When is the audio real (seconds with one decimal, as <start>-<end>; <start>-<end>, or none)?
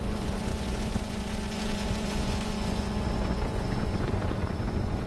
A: none